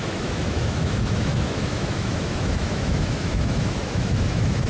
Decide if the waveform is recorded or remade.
remade